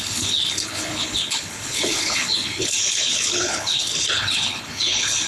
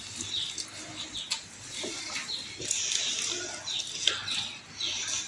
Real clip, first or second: second